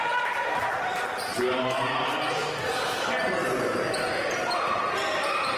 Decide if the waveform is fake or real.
fake